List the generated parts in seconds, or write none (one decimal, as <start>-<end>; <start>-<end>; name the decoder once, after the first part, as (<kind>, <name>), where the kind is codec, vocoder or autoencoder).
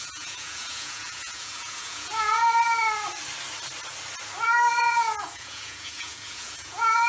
0.0-2.4 (vocoder, Vocos); 4.8-7.1